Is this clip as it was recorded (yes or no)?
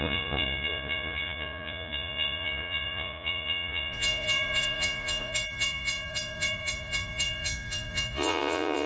no